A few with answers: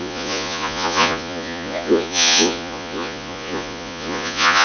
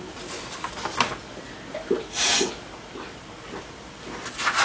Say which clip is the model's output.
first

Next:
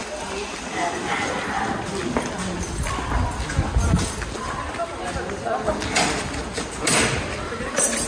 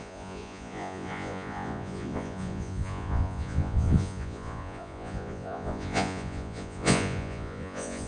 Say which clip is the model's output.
second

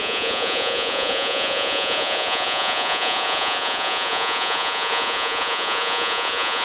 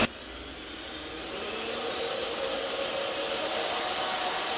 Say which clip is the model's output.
first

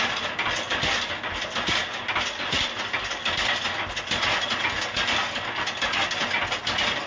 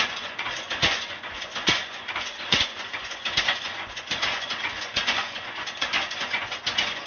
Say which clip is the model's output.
second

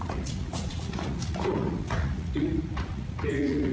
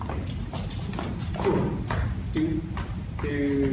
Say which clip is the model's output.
first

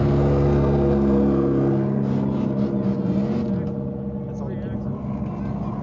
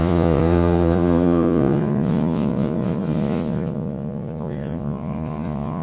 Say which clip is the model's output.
second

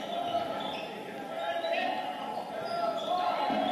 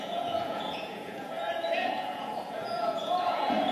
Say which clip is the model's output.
second